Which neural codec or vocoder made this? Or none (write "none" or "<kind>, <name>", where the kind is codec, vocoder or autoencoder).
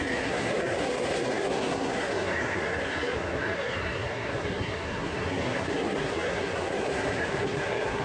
codec, SNAC